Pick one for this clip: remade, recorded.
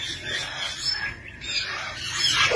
recorded